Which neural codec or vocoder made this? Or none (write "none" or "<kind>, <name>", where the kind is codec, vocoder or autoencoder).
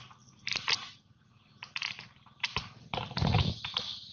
none